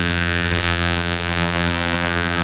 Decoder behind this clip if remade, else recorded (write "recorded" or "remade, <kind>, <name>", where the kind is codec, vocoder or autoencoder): remade, vocoder, BigVGAN v2